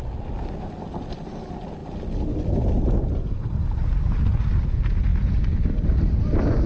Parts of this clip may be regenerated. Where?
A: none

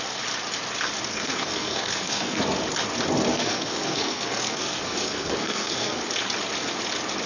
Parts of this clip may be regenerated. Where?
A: 1.1-2.4; 3.3-6.0

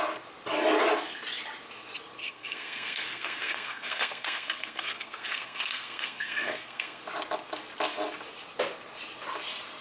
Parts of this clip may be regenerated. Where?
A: 2.2-7.0

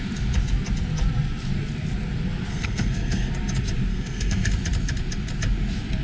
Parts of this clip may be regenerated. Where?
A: 2.5-3.3; 3.9-4.5